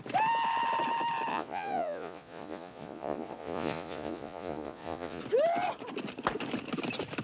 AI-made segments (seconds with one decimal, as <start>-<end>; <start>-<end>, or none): 1.3-5.2